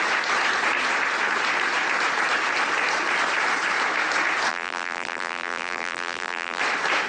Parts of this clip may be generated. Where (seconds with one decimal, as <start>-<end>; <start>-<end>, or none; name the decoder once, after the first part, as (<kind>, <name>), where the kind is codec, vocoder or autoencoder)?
4.5-6.6 (vocoder, BigVGAN v2)